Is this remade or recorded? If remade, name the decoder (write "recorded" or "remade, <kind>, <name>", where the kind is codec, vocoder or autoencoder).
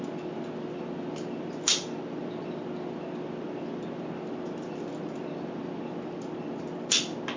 recorded